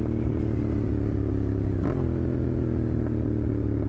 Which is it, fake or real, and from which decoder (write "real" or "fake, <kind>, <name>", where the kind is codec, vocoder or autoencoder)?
real